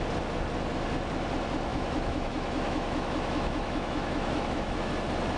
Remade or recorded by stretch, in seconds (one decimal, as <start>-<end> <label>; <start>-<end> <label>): 0.0-1.7 recorded; 1.7-4.9 remade; 4.9-5.4 recorded